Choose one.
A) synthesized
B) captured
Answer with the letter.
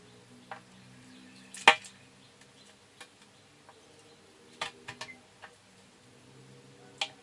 B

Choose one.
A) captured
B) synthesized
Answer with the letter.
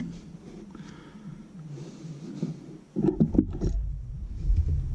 A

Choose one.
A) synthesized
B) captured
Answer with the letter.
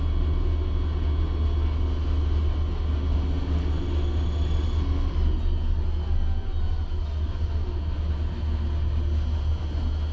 B